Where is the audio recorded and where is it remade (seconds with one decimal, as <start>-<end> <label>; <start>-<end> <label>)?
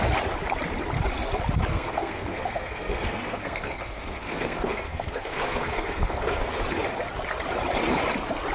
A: 0.0-1.7 recorded; 1.7-6.5 remade; 6.5-8.5 recorded